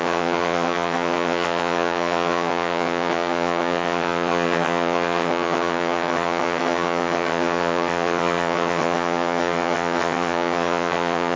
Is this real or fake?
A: fake